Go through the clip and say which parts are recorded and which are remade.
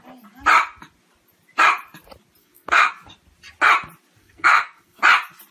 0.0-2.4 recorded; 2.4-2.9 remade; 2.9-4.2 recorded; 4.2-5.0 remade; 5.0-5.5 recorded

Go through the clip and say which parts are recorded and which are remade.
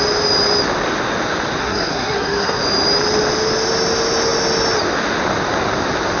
0.0-1.6 recorded; 1.6-2.6 remade; 2.6-6.2 recorded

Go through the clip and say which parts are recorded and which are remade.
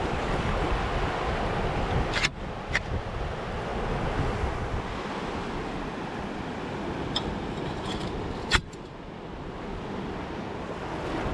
0.0-11.3 recorded